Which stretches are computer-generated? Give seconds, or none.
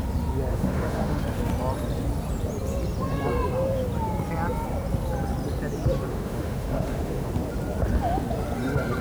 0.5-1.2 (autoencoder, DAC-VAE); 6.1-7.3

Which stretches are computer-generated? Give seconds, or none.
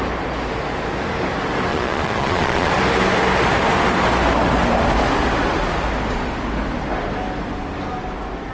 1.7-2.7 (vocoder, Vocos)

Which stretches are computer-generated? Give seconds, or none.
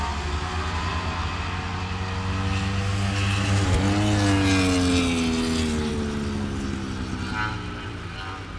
none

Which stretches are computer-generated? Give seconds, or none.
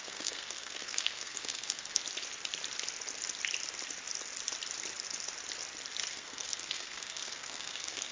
0.0-2.0 (codec, SNAC); 6.1-8.1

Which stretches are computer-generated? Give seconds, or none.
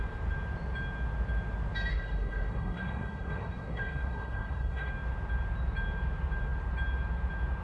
1.9-4.9 (codec, SNAC)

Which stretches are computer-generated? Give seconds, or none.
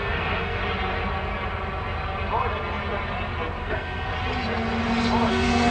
0.0-0.6 (codec, SNAC); 3.6-4.1; 5.3-5.7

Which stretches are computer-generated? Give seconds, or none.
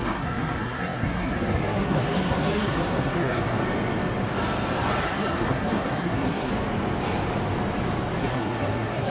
0.0-3.6 (codec, SNAC); 5.0-6.5; 8.2-9.1